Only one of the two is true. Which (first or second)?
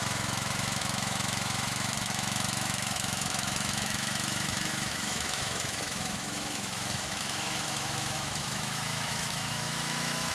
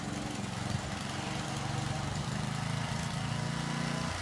second